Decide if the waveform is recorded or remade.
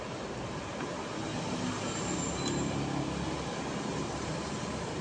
recorded